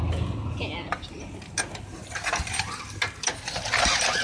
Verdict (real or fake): real